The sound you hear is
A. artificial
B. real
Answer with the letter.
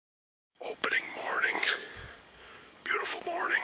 A